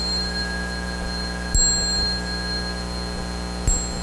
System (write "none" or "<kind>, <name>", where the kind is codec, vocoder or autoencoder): none